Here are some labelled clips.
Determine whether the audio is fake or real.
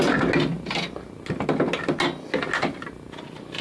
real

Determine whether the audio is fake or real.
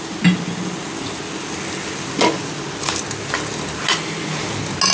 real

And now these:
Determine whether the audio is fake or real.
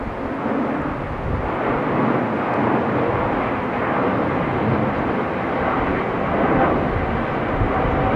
real